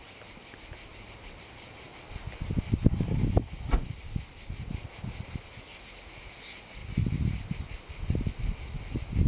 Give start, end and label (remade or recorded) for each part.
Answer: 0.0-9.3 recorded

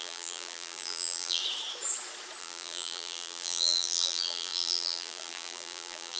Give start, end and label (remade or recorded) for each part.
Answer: 0.0-1.4 remade; 1.4-2.4 recorded; 2.4-6.2 remade

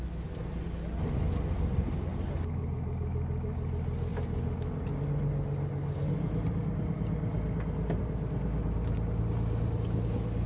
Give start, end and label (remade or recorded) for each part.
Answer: 0.0-10.5 recorded

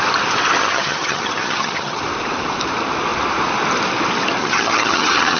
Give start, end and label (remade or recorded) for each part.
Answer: 0.0-0.6 recorded; 0.6-2.0 remade; 2.0-4.4 recorded; 4.4-5.4 remade

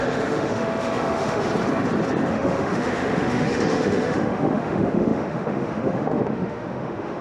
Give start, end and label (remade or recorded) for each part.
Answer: 0.0-1.5 remade; 1.5-2.3 recorded; 2.3-7.2 remade